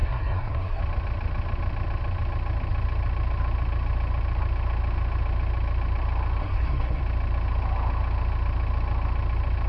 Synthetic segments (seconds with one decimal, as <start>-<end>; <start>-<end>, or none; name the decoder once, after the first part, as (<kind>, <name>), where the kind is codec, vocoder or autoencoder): 0.0-0.8 (codec, SNAC); 6.4-7.0